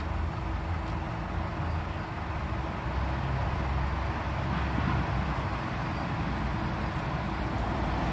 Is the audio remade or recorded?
recorded